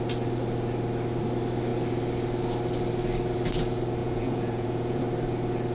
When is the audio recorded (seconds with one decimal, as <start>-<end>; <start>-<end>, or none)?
0.0-4.0; 5.0-5.7